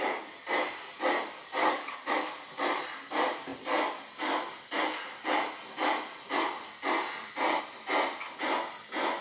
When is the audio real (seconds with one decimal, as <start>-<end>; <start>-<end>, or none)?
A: 0.0-1.6; 2.1-9.2